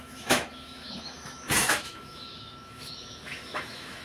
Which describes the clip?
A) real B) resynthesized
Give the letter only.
B